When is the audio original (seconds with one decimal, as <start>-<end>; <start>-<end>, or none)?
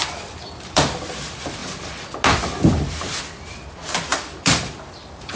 0.8-4.1